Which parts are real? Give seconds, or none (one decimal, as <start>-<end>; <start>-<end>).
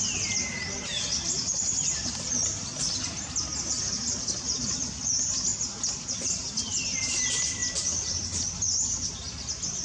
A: 0.0-9.8